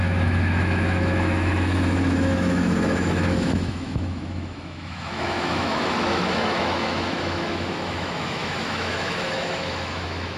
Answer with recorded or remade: remade